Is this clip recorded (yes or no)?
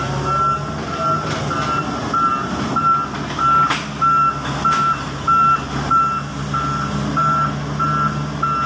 yes